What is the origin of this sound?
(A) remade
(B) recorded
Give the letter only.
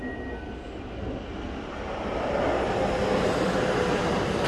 B